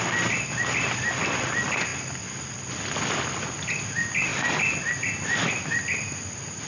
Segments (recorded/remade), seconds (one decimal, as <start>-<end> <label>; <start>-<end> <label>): 0.0-6.7 recorded